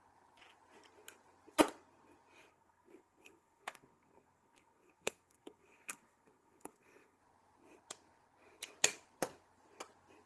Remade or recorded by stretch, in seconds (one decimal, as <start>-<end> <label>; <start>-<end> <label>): 0.0-2.5 recorded; 2.5-7.2 remade; 7.2-10.3 recorded